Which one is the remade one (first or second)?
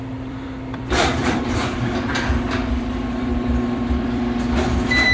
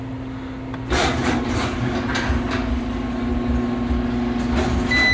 first